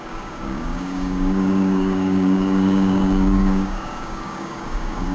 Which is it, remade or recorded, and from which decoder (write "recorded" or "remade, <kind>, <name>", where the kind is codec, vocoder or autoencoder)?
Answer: remade, codec, DAC